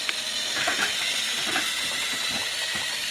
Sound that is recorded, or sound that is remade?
recorded